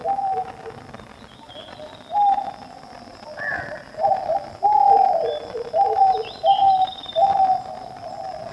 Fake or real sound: real